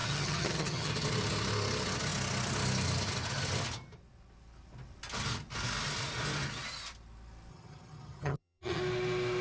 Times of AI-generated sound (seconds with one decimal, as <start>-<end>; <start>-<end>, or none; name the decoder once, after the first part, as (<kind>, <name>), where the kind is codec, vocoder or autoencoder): 0.0-0.9 (vocoder, HiFi-GAN); 7.5-8.8